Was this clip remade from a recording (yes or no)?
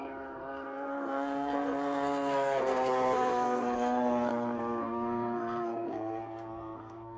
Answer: yes